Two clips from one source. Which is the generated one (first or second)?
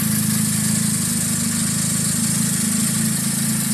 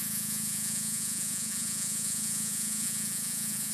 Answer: second